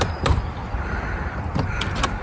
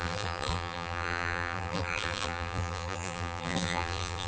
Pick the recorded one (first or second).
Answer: first